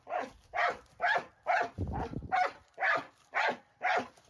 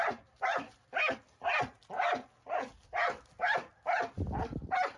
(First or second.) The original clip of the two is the second